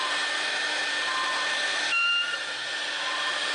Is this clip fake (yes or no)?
no